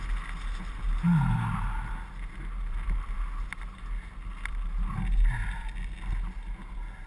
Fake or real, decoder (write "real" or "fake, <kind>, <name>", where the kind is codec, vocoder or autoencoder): real